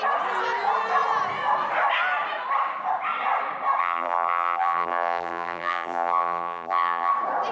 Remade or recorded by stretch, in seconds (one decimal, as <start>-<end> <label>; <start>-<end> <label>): 0.0-3.8 recorded; 3.8-7.1 remade; 7.1-7.5 recorded